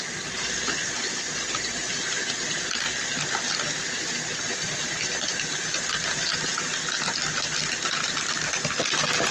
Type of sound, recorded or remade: recorded